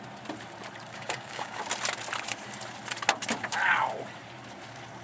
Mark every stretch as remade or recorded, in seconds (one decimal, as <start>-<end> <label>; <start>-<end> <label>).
0.0-0.9 recorded; 0.9-1.6 remade; 1.6-5.0 recorded